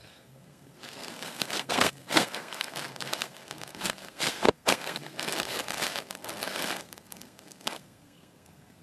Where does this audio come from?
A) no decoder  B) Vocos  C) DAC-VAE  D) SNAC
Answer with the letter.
D